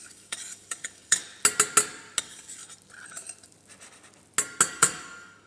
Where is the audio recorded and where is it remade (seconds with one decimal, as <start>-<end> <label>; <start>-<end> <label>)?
0.0-1.2 remade; 1.2-2.2 recorded; 2.2-2.6 remade; 2.6-4.7 recorded; 4.7-5.5 remade